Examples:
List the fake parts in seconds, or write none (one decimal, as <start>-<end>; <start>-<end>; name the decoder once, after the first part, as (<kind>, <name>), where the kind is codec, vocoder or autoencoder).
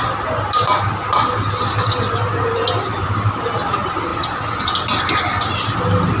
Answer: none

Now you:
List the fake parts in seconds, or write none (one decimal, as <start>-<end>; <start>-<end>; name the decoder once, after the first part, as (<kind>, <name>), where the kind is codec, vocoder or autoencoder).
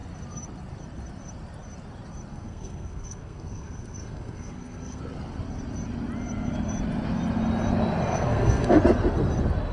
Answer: 2.3-5.0 (codec, SNAC); 8.1-8.8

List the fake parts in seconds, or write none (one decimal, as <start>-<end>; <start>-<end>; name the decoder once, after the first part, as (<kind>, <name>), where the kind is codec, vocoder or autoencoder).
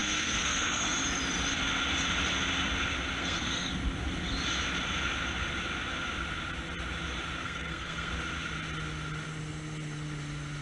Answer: 0.0-1.0 (codec, SNAC); 3.2-3.7; 7.4-8.1